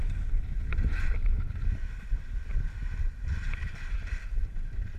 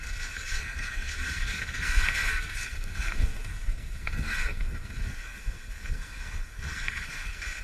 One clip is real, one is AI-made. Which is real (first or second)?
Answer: first